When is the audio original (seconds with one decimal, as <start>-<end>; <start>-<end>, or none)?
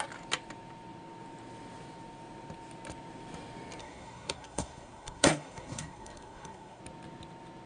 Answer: 0.0-3.8; 6.8-7.7